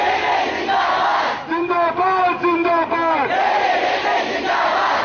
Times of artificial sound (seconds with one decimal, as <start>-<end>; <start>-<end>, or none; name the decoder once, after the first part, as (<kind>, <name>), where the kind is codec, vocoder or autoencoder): 3.2-3.8 (vocoder, Vocos)